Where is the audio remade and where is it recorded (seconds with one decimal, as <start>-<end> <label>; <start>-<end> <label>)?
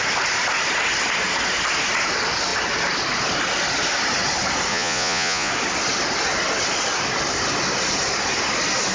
0.0-4.7 recorded; 4.7-5.5 remade; 5.5-8.9 recorded